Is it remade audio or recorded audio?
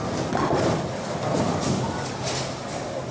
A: recorded